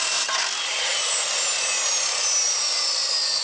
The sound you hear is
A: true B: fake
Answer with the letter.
A